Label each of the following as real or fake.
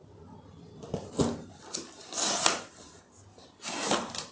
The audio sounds real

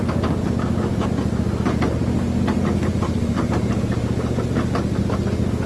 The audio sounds real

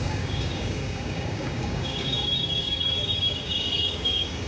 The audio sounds fake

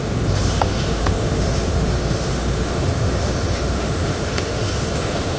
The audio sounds fake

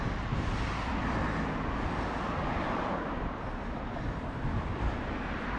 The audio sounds real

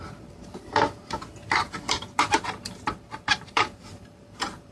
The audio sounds fake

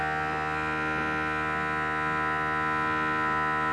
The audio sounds real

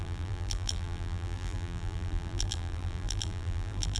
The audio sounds fake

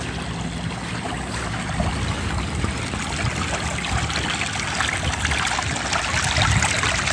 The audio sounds real